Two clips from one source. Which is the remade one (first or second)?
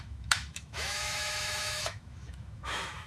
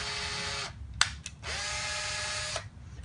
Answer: first